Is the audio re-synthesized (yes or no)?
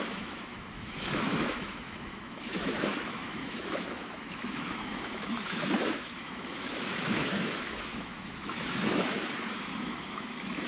yes